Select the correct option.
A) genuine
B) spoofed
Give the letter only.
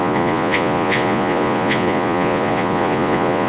B